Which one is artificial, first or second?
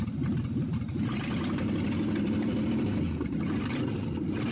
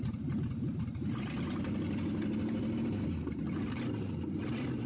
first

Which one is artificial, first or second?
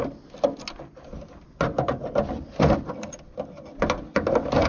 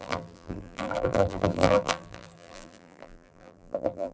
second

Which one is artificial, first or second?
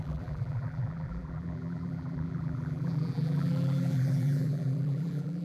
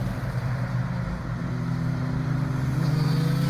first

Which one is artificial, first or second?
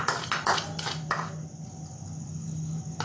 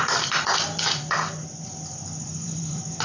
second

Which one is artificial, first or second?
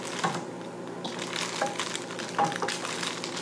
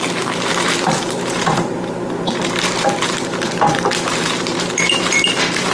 second